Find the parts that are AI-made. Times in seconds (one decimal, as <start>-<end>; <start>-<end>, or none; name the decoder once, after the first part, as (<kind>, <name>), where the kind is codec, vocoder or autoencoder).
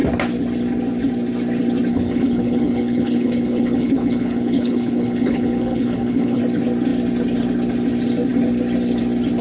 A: 1.9-6.4 (codec, HILCodec)